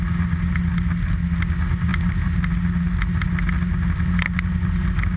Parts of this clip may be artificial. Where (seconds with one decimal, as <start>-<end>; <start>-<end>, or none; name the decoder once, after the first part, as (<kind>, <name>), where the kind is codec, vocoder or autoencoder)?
none